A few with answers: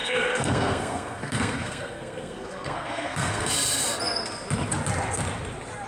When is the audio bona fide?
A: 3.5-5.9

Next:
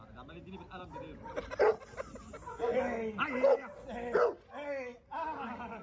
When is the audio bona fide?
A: 0.0-5.8

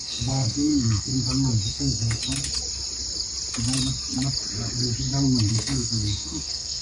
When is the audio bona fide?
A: 1.1-1.7; 2.2-5.5

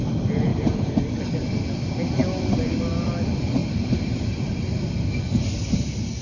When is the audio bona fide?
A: 0.0-0.5; 1.2-2.2; 2.9-3.6; 4.9-6.2

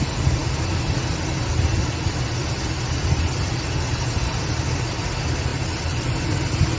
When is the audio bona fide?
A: 0.0-6.8

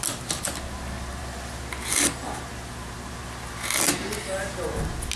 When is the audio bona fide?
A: 0.0-5.2